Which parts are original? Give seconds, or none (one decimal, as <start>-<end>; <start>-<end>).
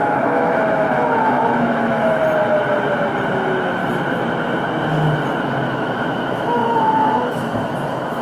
2.2-3.3; 3.8-5.3